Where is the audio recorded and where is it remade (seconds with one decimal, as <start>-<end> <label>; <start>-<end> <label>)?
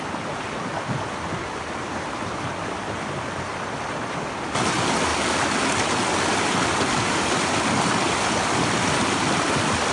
0.0-9.9 recorded